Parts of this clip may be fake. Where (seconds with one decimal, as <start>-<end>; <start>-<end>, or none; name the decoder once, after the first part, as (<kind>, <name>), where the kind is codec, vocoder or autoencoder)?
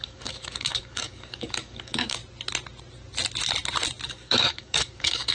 0.0-2.2 (codec, DAC); 4.1-5.3